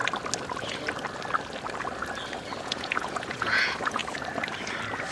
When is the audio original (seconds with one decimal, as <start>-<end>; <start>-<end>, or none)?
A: 0.0-2.6; 4.0-5.1